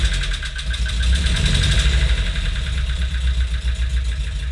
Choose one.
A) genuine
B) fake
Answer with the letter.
A